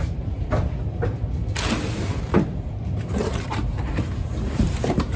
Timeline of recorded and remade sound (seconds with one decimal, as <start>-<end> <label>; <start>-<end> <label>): 0.0-1.4 remade; 1.4-2.0 recorded; 2.0-5.2 remade

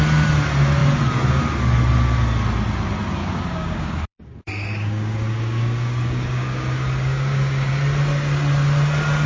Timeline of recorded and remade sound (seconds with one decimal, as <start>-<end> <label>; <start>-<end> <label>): 0.0-3.2 recorded; 3.2-7.7 remade; 7.7-9.3 recorded

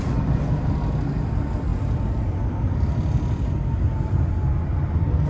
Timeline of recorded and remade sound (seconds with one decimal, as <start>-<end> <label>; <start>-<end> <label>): 0.0-5.3 recorded

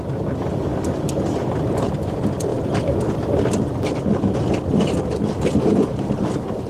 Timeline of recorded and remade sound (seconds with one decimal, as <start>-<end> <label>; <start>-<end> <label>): 0.0-6.7 recorded